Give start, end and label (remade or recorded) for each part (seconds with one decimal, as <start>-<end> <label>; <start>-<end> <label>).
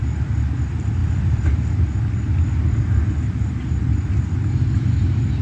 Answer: 0.0-5.4 recorded